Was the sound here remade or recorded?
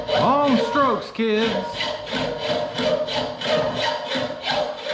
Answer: recorded